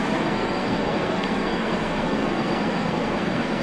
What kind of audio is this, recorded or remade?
remade